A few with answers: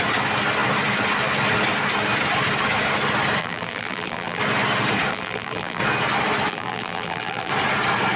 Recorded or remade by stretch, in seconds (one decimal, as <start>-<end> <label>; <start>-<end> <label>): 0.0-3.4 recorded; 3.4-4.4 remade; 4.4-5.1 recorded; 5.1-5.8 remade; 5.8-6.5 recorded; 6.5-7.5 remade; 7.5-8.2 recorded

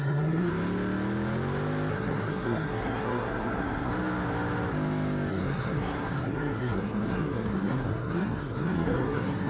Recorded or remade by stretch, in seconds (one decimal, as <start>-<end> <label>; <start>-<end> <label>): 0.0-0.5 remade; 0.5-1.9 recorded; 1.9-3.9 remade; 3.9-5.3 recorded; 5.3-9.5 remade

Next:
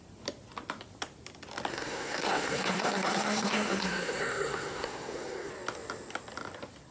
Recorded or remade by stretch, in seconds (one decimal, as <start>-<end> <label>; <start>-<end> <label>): 0.0-1.7 recorded; 1.7-5.5 remade; 5.5-6.9 recorded

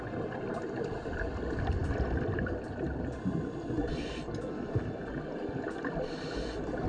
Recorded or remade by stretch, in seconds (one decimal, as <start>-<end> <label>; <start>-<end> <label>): 0.0-6.9 recorded